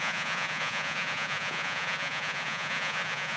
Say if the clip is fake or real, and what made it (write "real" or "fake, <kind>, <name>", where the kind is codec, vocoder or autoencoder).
fake, vocoder, Vocos